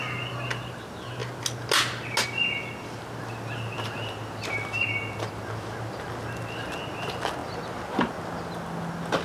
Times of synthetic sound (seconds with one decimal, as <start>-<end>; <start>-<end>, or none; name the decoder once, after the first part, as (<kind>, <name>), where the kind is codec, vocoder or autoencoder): none